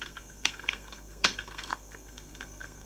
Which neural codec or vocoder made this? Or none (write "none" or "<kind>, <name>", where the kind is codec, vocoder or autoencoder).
codec, SNAC